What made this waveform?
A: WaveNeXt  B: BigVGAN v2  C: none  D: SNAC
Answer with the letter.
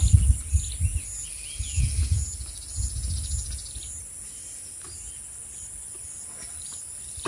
C